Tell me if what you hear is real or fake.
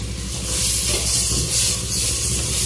real